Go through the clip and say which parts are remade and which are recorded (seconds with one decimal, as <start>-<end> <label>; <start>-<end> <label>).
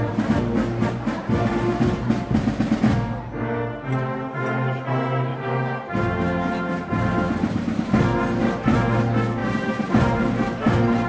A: 0.0-0.8 recorded; 0.8-2.8 remade; 2.8-9.4 recorded; 9.4-10.2 remade; 10.2-11.1 recorded